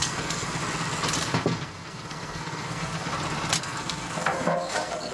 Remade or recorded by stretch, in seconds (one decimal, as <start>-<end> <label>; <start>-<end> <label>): 0.0-0.6 remade; 0.6-1.2 recorded; 1.2-3.1 remade; 3.1-3.6 recorded; 3.6-5.1 remade